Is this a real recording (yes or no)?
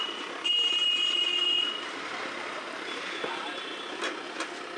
yes